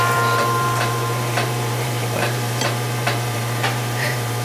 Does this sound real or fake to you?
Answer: fake